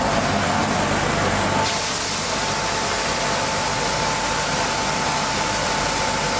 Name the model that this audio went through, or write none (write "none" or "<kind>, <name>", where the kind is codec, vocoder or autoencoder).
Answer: none